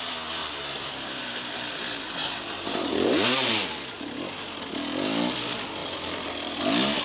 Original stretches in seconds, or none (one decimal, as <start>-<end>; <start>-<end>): 0.0-0.4; 3.5-5.8; 6.6-7.0